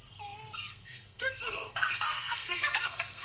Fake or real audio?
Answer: fake